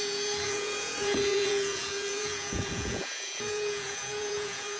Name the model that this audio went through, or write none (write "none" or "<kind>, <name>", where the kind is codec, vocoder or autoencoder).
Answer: vocoder, Vocos